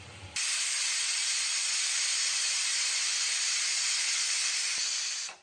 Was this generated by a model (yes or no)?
no